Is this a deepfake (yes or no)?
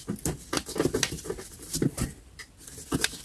no